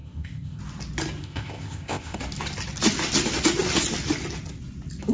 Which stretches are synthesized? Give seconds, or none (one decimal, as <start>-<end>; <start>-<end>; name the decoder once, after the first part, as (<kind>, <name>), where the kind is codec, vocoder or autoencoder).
0.0-0.6 (codec, ZipCodec); 1.2-2.2